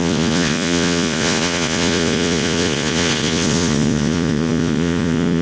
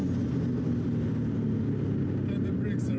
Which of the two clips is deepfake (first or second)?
first